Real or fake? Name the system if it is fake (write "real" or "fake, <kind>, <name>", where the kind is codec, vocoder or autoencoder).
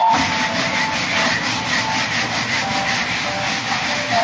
real